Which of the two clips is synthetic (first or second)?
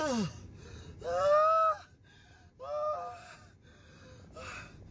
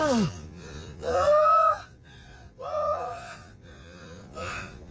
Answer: second